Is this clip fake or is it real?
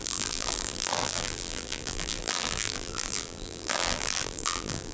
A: fake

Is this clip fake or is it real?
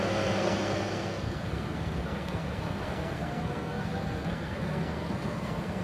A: fake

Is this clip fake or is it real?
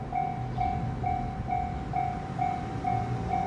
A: real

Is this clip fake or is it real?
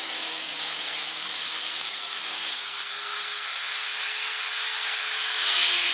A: fake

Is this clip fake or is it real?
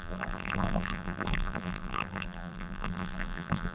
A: fake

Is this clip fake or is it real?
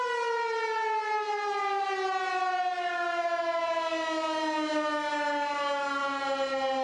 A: real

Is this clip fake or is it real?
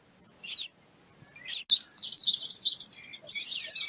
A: real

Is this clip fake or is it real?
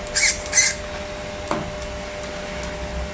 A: real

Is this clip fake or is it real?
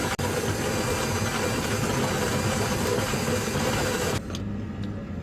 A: real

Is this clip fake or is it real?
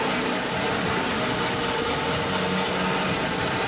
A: real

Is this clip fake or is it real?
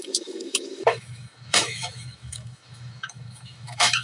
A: fake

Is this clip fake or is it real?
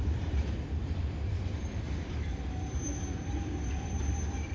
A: fake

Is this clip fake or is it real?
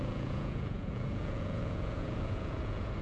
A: fake